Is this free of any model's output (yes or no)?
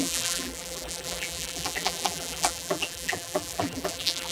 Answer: no